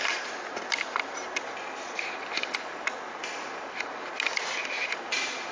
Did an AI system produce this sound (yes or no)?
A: no